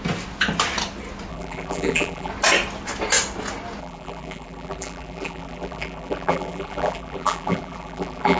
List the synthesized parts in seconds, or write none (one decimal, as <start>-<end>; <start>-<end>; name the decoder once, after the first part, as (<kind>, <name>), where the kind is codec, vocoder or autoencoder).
1.3-2.3 (vocoder, BigVGAN v2); 3.8-8.4